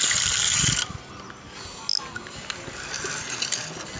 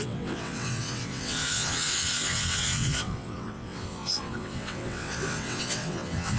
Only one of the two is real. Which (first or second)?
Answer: first